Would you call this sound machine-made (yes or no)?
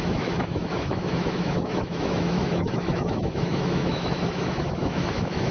yes